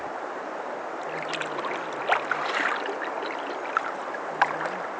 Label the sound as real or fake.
real